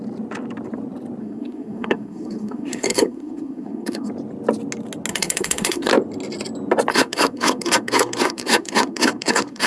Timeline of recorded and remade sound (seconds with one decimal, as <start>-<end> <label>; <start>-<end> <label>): 0.0-1.2 recorded; 1.2-4.1 remade; 4.1-5.1 recorded; 5.1-5.9 remade; 5.9-6.9 recorded; 6.9-9.7 remade